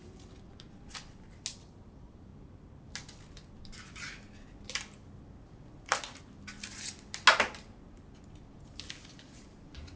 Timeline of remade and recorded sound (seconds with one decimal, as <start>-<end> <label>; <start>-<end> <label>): 0.0-10.0 recorded